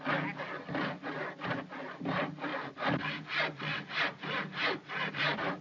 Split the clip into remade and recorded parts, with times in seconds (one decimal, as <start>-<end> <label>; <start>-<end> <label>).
0.0-5.6 recorded